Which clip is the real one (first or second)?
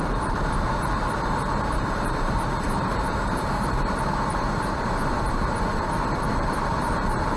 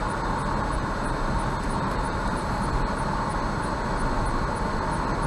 second